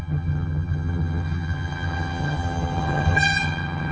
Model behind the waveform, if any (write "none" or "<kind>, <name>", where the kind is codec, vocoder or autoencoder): vocoder, HiFi-GAN